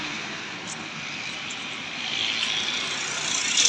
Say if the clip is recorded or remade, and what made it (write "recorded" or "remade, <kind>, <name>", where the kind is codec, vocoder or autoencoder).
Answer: recorded